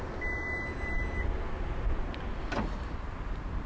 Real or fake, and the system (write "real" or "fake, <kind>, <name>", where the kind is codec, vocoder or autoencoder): real